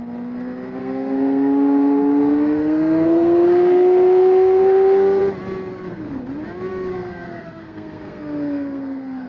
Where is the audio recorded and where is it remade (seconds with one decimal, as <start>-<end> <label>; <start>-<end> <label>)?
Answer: 0.0-0.8 recorded; 0.8-5.2 remade; 5.2-5.7 recorded; 5.7-6.2 remade; 6.2-6.7 recorded; 6.7-9.3 remade